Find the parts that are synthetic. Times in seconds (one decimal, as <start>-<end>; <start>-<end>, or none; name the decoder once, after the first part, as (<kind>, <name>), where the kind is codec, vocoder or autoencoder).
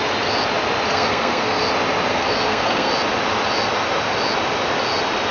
0.9-1.6 (codec, SNAC); 2.1-2.9